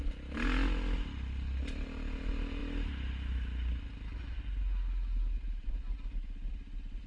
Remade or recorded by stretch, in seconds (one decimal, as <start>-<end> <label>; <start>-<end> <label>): 0.0-7.1 recorded